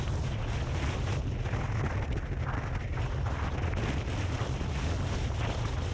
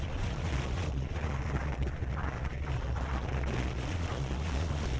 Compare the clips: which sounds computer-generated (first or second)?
second